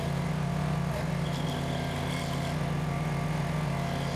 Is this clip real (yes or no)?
yes